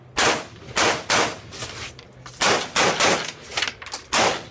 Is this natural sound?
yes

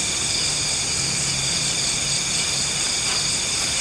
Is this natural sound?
yes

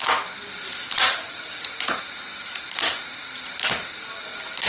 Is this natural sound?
yes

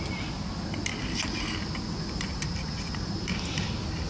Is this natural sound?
yes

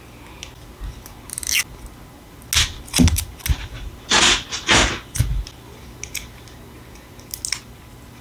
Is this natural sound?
yes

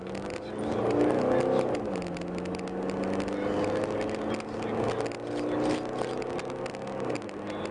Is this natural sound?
yes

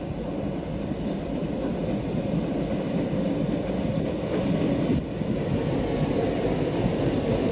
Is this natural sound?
yes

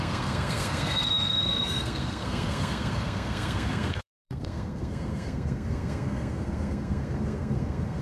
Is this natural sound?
no